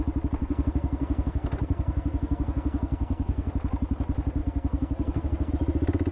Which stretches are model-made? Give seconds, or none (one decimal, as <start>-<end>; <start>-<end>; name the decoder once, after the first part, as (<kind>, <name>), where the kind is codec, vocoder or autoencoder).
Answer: 0.4-3.5 (codec, SNAC); 4.4-5.5